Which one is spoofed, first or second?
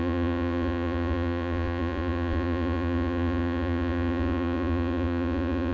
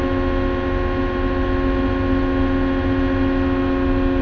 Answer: first